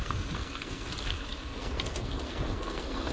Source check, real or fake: fake